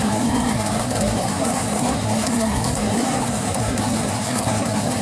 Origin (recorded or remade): remade